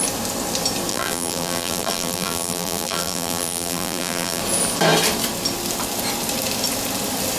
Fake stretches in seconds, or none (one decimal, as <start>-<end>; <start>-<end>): 0.9-4.4